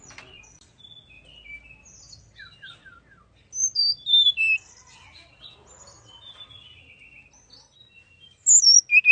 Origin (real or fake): real